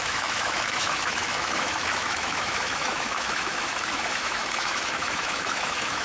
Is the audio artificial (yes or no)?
yes